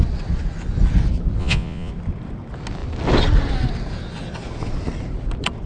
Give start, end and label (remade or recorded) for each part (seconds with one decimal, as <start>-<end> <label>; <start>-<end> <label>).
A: 0.0-1.4 recorded; 1.4-1.9 remade; 1.9-5.7 recorded